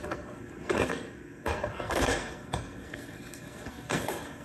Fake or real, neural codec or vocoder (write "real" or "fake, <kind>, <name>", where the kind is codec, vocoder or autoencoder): fake, codec, SNAC